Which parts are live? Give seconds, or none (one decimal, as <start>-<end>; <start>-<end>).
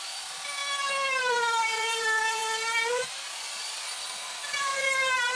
0.6-1.2; 2.4-2.9